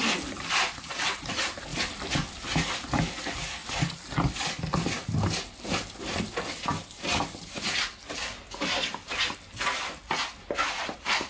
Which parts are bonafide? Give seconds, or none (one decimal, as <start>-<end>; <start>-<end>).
none